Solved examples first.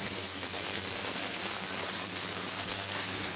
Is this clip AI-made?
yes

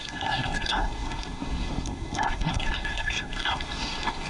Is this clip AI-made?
yes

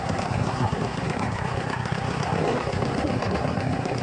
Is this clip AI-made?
yes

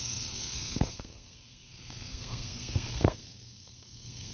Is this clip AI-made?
yes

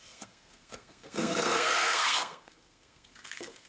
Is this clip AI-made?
yes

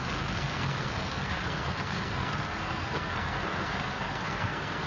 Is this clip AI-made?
yes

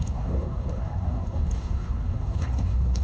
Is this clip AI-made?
yes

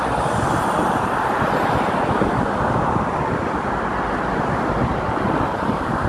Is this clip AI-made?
no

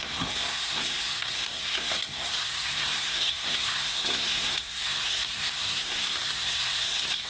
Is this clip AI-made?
yes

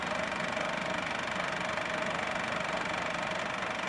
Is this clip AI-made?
no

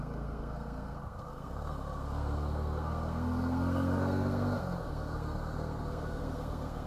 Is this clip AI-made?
yes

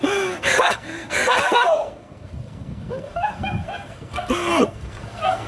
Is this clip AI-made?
yes